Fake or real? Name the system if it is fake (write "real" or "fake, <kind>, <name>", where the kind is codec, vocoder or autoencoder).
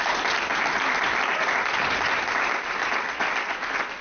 real